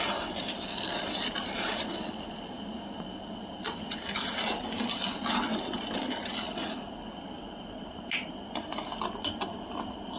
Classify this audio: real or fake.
real